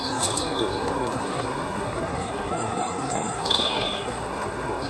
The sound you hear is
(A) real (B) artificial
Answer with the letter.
B